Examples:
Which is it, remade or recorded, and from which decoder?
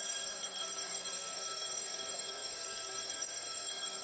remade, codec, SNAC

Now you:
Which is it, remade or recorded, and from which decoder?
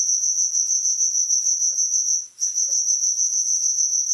recorded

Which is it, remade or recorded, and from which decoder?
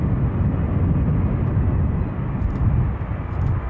recorded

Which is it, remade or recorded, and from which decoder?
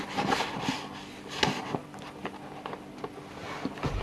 recorded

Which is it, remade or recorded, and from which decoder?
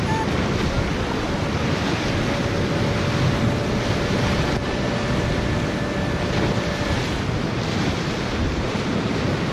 recorded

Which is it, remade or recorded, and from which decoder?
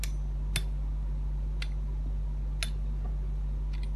recorded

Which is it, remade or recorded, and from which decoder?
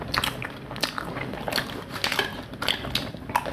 recorded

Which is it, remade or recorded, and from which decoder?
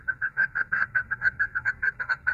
remade, codec, SNAC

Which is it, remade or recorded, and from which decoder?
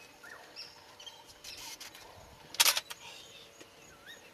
recorded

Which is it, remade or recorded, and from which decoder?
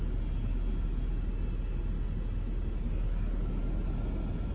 recorded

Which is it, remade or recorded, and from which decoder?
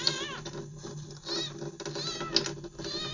recorded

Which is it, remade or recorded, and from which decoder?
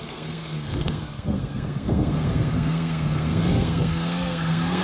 remade, codec, SNAC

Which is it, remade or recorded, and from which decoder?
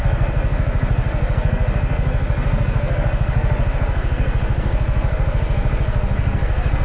remade, codec, SNAC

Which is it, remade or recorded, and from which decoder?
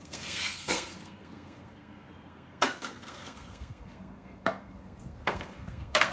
remade, codec, SNAC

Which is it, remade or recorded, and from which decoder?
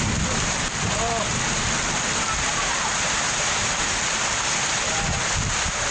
recorded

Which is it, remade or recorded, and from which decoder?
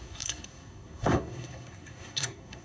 remade, codec, SNAC